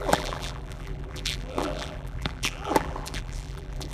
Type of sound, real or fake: fake